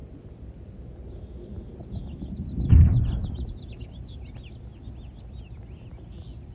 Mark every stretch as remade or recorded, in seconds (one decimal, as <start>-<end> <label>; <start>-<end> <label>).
0.0-6.5 recorded